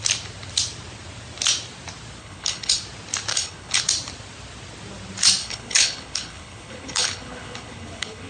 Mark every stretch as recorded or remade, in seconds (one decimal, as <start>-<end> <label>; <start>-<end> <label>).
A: 0.0-2.2 recorded; 2.2-2.8 remade; 2.8-3.3 recorded; 3.3-3.8 remade; 3.8-5.4 recorded; 5.4-8.3 remade